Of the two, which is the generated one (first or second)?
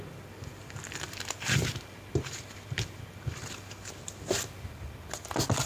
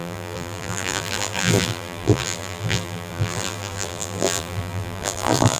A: second